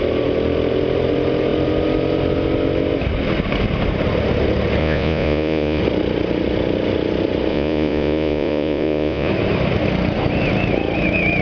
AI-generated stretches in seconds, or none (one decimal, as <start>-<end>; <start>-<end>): 4.8-5.8; 7.5-9.3